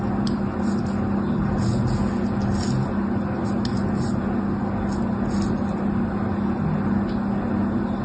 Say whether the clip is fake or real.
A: real